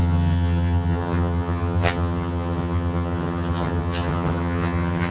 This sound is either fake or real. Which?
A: fake